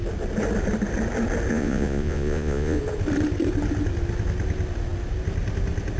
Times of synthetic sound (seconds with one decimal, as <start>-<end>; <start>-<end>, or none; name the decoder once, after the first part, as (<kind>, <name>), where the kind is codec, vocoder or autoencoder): 1.5-2.8 (vocoder, Vocos)